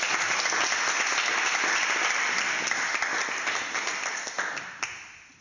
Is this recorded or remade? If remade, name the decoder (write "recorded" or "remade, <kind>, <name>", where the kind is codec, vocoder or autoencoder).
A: recorded